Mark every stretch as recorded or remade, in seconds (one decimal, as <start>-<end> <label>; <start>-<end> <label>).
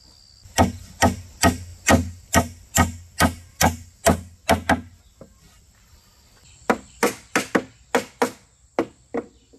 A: 0.0-9.6 recorded